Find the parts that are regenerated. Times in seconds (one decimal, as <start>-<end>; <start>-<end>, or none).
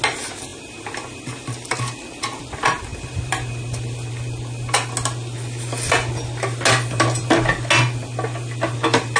0.5-1.8; 2.9-4.1